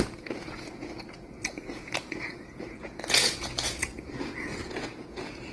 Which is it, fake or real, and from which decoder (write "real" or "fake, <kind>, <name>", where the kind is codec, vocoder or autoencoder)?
fake, vocoder, Vocos